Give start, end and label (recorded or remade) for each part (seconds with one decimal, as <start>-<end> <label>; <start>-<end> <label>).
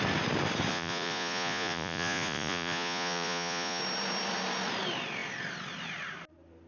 0.0-0.7 recorded; 0.7-3.8 remade; 3.8-6.7 recorded